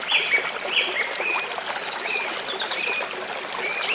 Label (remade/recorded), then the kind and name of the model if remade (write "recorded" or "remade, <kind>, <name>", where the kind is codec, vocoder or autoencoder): recorded